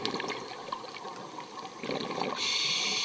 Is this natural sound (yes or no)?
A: yes